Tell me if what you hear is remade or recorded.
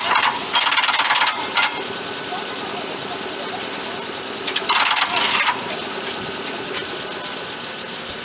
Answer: remade